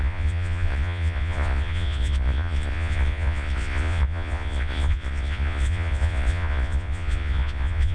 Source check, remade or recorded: remade